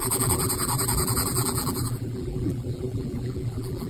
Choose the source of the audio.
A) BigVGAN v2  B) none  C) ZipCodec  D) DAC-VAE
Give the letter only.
A